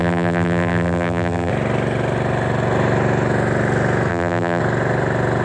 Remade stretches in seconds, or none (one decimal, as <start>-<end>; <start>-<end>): 0.0-1.5; 4.1-4.6